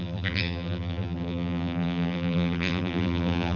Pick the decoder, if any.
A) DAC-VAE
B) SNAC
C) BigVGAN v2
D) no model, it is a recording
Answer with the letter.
C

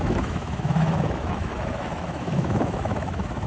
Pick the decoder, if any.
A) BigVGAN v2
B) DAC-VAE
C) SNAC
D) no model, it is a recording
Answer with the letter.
B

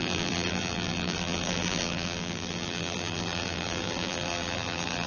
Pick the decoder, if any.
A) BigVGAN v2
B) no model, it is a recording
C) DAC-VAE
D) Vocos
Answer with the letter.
A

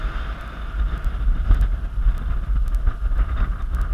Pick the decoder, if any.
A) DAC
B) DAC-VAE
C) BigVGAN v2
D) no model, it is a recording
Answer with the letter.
D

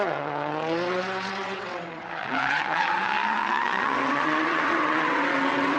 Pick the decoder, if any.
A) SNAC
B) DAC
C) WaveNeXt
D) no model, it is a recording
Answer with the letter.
C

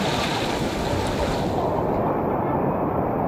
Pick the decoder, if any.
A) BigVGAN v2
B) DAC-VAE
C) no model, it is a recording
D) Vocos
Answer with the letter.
C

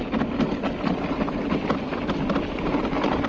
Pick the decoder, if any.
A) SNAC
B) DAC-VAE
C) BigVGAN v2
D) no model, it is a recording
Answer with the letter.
D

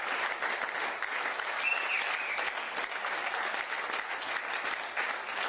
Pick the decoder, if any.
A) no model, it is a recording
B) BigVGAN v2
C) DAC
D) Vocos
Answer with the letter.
A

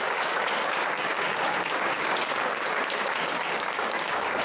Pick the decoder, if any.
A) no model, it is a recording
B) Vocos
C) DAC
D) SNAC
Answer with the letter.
C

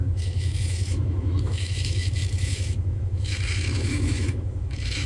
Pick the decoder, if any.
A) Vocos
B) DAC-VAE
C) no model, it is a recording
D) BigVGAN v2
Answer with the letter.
B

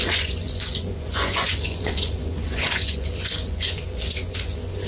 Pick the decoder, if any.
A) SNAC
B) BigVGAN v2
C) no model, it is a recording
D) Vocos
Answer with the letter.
D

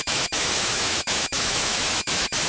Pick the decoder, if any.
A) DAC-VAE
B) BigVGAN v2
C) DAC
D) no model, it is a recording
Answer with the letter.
A